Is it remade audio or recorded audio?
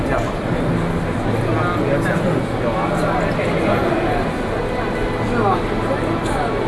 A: recorded